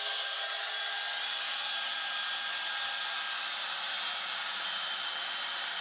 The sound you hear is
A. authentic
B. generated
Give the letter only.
A